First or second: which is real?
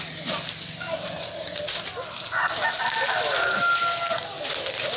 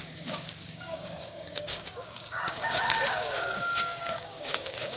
first